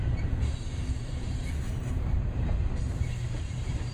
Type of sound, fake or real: fake